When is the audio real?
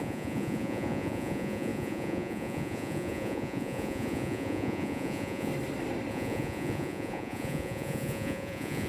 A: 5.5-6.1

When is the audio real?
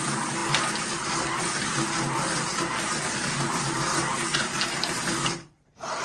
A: 0.0-4.3; 5.1-6.0